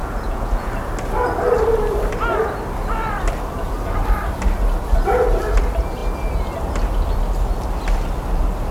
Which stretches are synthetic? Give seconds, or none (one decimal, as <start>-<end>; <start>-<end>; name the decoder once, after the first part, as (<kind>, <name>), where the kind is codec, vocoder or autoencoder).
0.0-0.7 (vocoder, Vocos)